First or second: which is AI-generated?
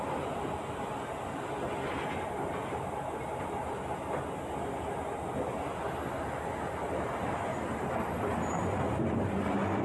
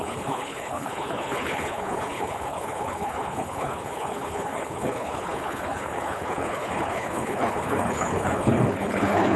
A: second